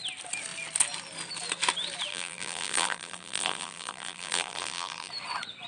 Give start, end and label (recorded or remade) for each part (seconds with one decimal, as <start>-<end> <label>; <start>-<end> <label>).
0.0-2.1 recorded; 2.1-5.1 remade; 5.1-5.7 recorded